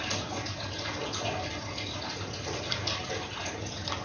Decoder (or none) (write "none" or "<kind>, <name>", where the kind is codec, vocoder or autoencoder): none